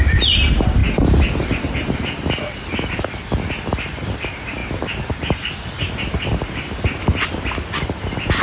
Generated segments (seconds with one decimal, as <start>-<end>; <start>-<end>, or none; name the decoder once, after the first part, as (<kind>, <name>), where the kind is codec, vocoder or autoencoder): none